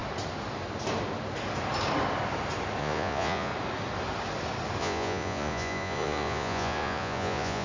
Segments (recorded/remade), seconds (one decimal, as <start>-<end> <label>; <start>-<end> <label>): 0.0-2.8 recorded; 2.8-3.5 remade; 3.5-4.8 recorded; 4.8-7.6 remade